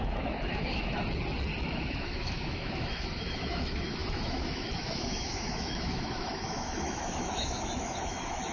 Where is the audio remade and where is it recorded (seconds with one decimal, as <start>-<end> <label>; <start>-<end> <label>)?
0.0-1.0 remade; 1.0-1.6 recorded; 1.6-8.5 remade